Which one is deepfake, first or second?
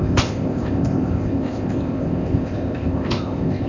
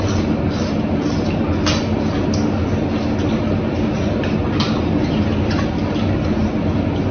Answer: first